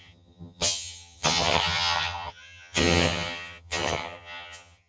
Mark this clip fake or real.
fake